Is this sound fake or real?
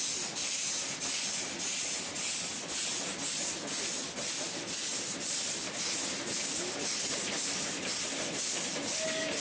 real